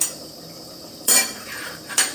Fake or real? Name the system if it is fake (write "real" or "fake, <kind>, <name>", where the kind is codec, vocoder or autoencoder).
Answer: fake, vocoder, BigVGAN v2